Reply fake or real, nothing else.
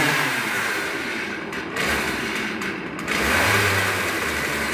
fake